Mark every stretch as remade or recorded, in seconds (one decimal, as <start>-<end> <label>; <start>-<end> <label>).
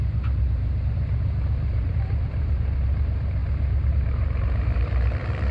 0.0-3.4 remade; 3.4-3.9 recorded; 3.9-5.5 remade